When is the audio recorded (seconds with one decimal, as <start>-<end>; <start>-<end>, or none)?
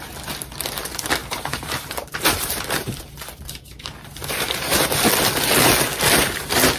0.0-1.2; 2.9-4.2; 5.1-6.8